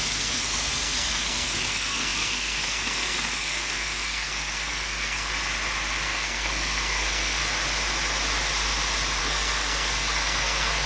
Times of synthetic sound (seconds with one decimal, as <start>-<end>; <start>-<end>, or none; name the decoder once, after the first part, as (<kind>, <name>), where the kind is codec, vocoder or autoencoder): 0.0-5.3 (codec, SNAC); 5.9-7.4; 9.2-10.9